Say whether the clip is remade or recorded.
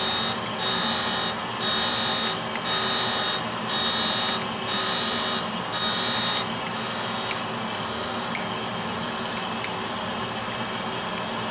recorded